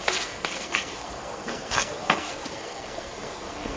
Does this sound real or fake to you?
fake